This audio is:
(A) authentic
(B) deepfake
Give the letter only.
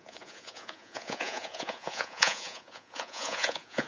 B